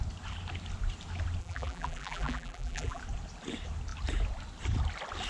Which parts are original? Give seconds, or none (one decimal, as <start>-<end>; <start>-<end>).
0.0-1.4; 3.0-5.3